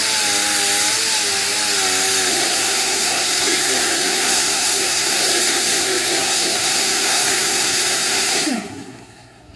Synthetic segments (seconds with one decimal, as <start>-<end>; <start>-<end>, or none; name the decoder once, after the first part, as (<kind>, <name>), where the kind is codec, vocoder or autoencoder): 2.3-9.6 (codec, SNAC)